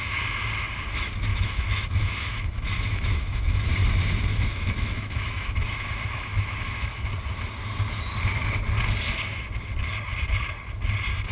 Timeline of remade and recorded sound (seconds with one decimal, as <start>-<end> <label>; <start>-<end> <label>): 0.0-1.3 recorded; 1.3-3.7 remade; 3.7-4.3 recorded; 4.3-7.1 remade; 7.1-11.3 recorded